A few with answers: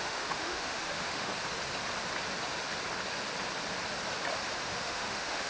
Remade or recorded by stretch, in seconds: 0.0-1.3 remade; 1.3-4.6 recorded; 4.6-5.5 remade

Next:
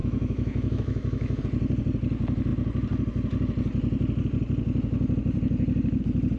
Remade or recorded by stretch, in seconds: 0.0-1.4 remade; 1.4-6.4 recorded

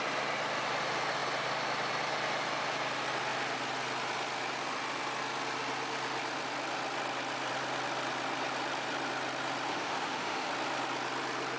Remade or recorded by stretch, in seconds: 0.0-9.7 recorded; 9.7-10.5 remade; 10.5-11.6 recorded

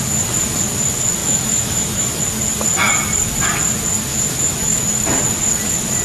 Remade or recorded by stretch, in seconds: 0.0-1.2 recorded; 1.2-2.2 remade; 2.2-4.1 recorded; 4.1-5.0 remade; 5.0-6.0 recorded